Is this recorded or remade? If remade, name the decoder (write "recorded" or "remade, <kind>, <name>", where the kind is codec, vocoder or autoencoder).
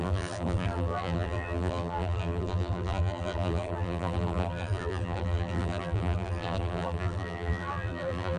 remade, vocoder, BigVGAN v2